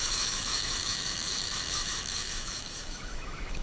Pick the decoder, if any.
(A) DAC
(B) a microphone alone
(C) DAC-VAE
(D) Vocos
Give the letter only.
C